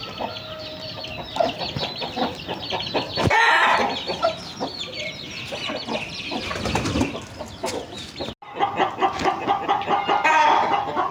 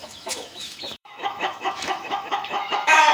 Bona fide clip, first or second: first